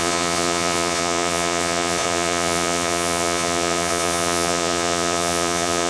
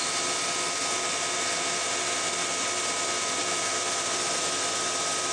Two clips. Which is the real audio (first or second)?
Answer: second